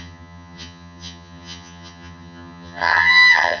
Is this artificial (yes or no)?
yes